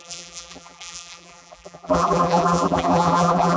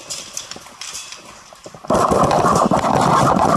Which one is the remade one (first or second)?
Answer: first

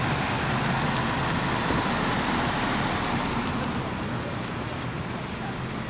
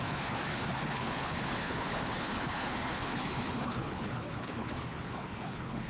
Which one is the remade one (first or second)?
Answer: second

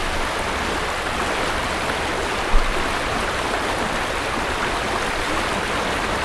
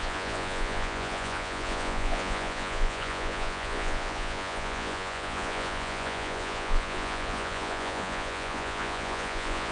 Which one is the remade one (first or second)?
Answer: second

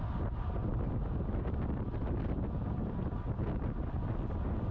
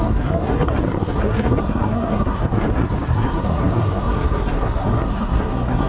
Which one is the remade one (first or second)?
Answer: second